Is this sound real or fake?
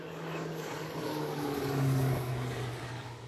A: fake